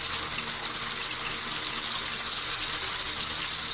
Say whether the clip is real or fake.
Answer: real